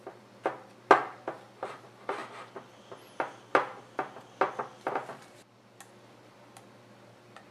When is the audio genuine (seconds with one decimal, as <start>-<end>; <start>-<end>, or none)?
0.0-7.5